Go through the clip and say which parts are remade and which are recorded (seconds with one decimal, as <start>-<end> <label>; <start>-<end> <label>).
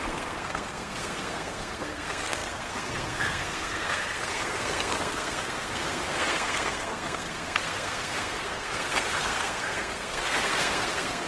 0.0-11.3 remade